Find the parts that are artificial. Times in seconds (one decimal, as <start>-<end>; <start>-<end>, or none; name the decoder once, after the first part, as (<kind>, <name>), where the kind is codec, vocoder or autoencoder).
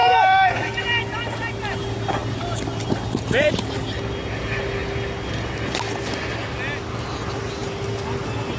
0.0-0.7 (codec, DAC)